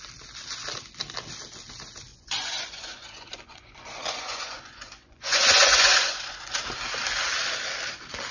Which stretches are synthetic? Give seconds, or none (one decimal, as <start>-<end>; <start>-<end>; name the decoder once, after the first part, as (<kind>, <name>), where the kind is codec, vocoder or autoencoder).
2.1-6.6 (vocoder, Vocos)